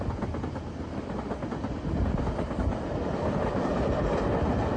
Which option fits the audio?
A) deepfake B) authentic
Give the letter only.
B